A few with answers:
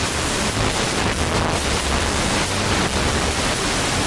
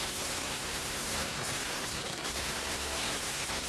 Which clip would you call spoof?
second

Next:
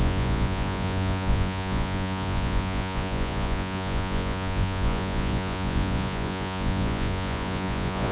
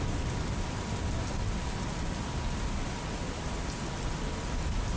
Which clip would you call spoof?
first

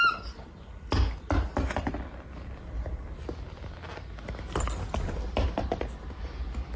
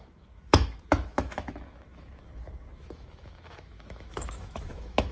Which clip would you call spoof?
second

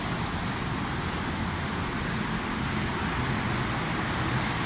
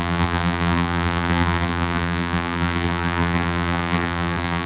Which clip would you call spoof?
second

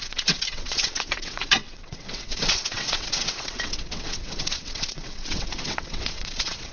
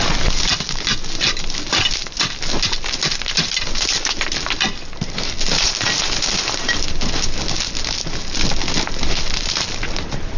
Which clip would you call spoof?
first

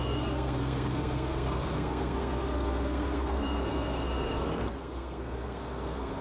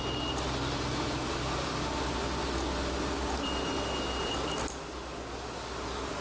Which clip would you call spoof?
first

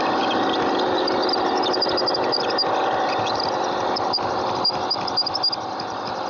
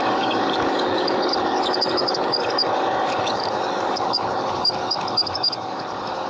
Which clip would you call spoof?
second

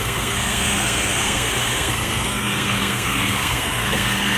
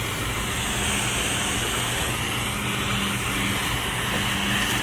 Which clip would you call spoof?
first